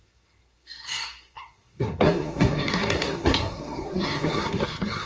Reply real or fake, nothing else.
fake